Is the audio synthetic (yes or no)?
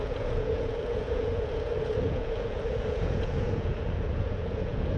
yes